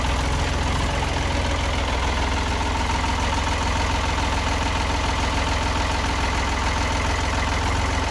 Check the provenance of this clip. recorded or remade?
recorded